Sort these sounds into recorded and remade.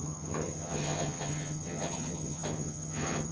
remade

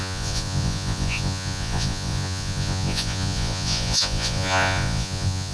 remade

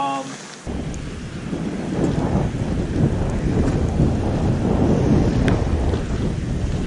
recorded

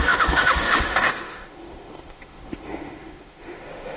remade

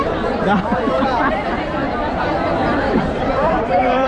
remade